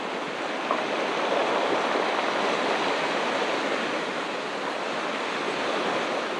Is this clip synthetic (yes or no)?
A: no